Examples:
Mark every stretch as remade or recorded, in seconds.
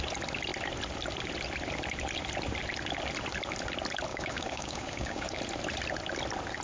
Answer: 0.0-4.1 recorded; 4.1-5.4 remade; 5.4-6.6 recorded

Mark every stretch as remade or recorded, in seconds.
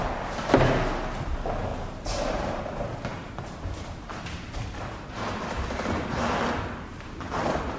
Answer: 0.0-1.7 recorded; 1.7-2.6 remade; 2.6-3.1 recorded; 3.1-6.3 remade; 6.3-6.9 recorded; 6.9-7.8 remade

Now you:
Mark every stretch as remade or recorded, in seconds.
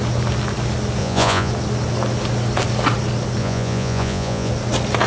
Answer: 0.0-1.0 recorded; 1.0-1.5 remade; 1.5-3.4 recorded; 3.4-4.5 remade; 4.5-5.1 recorded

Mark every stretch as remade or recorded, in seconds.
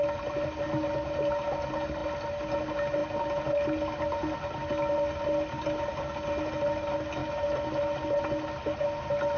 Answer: 0.0-9.4 recorded